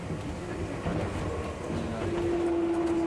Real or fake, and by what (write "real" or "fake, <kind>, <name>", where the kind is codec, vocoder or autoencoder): real